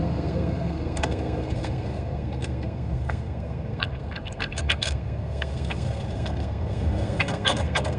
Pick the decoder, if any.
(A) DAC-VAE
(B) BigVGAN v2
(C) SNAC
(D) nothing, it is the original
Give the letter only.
C